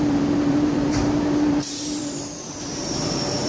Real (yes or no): no